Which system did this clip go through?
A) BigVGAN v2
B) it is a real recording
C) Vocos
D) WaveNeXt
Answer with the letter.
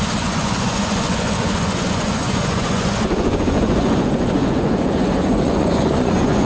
C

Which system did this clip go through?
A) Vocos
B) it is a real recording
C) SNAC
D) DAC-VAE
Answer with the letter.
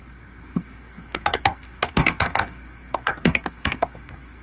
C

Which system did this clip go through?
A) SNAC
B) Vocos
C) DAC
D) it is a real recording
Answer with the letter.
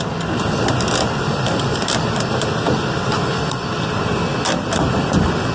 D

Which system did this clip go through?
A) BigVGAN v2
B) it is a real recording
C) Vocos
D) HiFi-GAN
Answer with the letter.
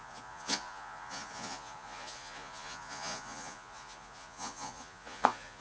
C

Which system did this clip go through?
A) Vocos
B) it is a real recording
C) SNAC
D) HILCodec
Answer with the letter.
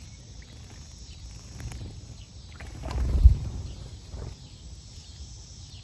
B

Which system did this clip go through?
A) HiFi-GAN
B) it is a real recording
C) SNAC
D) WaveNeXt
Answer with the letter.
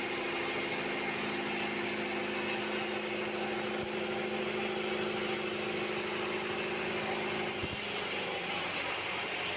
B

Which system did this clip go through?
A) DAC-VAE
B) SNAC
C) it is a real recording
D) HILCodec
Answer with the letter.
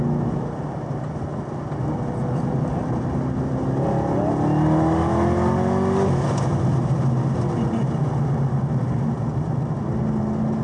C